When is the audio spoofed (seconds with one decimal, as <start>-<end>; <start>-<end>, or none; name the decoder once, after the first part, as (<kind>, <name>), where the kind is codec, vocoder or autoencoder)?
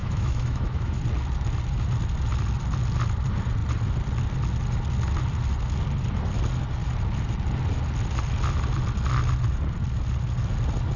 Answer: 0.0-1.0 (autoencoder, DAC-VAE)